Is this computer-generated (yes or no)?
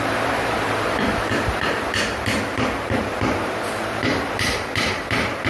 yes